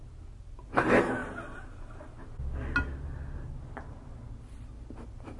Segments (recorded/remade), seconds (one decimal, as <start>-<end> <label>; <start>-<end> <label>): 0.0-5.4 recorded